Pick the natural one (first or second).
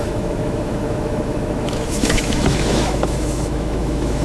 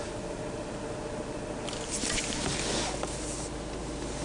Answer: second